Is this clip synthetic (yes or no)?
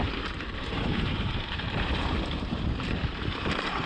yes